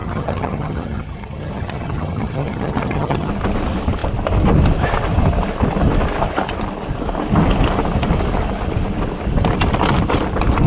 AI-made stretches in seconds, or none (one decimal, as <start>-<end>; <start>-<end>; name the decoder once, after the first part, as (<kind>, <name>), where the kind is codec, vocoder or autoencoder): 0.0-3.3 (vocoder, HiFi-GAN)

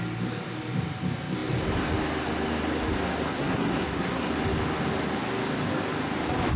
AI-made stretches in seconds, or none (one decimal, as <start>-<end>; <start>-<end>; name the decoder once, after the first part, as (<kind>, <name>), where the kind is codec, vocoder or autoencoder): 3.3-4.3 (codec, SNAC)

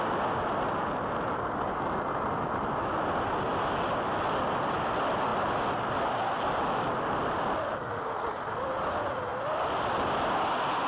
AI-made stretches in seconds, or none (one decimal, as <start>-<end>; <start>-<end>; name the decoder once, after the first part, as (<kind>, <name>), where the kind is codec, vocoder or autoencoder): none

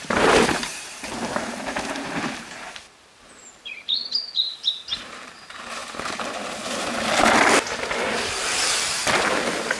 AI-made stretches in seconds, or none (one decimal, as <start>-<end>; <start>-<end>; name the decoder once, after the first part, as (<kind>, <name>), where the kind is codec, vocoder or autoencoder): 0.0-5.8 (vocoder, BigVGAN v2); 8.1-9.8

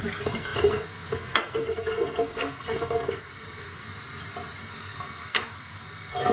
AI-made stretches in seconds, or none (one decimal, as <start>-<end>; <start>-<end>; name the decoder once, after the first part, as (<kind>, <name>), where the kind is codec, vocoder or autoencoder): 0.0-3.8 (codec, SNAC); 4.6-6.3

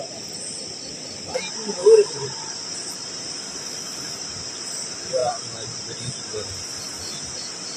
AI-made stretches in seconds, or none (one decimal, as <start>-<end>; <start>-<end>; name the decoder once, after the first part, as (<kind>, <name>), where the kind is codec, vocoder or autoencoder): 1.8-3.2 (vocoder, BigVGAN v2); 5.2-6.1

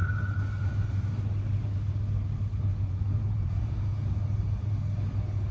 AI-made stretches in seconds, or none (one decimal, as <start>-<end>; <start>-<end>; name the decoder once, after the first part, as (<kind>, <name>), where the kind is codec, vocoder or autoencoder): 2.7-4.1 (vocoder, Vocos)